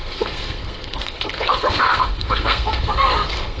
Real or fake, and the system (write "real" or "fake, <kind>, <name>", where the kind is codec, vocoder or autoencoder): fake, codec, SNAC